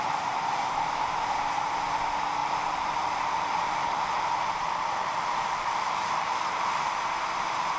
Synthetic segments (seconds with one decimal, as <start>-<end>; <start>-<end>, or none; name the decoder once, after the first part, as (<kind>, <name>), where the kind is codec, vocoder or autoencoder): 2.4-6.9 (vocoder, BigVGAN v2)